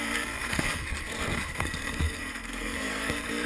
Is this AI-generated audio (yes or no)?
yes